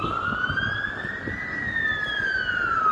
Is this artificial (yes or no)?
no